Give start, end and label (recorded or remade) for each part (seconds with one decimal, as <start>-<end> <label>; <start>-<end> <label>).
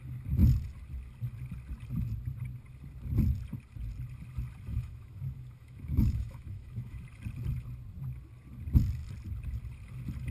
0.0-4.7 recorded; 4.7-7.0 remade; 7.0-10.3 recorded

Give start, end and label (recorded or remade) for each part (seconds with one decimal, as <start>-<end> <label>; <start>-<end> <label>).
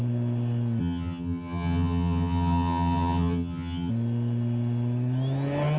0.0-0.8 recorded; 0.8-3.9 remade; 3.9-5.8 recorded